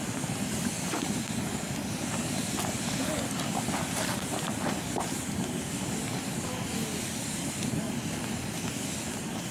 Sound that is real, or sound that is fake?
real